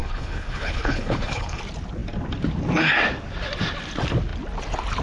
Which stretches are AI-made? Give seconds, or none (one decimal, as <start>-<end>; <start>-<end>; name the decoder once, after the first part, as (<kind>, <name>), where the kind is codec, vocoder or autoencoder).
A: 0.0-1.6 (codec, HILCodec)